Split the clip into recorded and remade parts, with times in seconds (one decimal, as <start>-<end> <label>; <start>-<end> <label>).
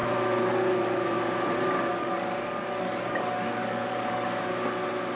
0.0-1.9 recorded; 1.9-4.5 remade; 4.5-5.2 recorded